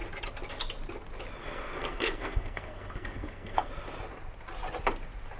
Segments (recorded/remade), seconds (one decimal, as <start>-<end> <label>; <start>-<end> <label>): 0.0-1.4 recorded; 1.4-3.7 remade; 3.7-5.4 recorded

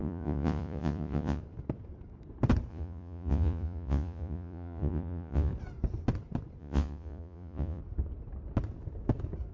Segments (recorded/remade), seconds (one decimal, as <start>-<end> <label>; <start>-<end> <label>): 0.0-1.4 remade; 1.4-2.7 recorded; 2.7-5.5 remade; 5.5-6.6 recorded; 6.6-7.8 remade; 7.8-9.5 recorded

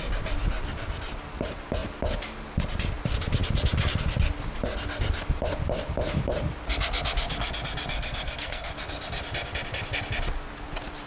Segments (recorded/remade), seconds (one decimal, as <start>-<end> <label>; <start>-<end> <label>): 0.0-7.9 recorded; 7.9-8.7 remade; 8.7-11.1 recorded

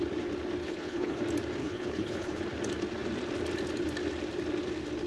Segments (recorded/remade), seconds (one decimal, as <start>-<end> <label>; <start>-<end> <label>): 0.0-0.6 recorded; 0.6-1.2 remade; 1.2-1.6 recorded; 1.6-2.4 remade; 2.4-5.1 recorded

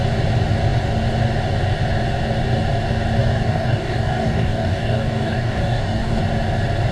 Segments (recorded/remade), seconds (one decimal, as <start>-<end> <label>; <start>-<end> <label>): 0.0-3.2 recorded; 3.2-6.2 remade; 6.2-6.9 recorded